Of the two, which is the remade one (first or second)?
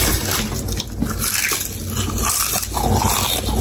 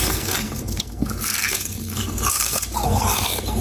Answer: second